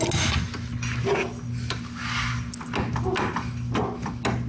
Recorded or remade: recorded